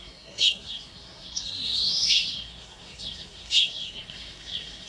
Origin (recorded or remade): remade